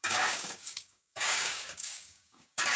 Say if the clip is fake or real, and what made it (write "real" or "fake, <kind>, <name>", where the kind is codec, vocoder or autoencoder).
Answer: fake, codec, DAC